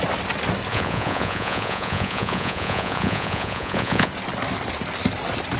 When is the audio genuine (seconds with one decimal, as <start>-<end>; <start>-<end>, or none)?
0.0-0.7; 4.1-5.6